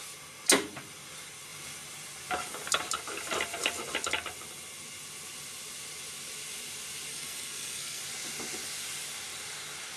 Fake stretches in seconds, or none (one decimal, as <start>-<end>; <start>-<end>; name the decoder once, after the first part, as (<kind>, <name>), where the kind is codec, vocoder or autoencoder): 7.1-8.0 (codec, SNAC)